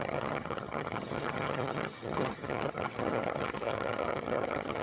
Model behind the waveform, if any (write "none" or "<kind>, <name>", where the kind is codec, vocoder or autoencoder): vocoder, HiFi-GAN